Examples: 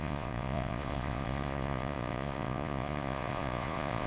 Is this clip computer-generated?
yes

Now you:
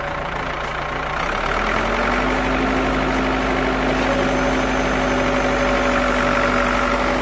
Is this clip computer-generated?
no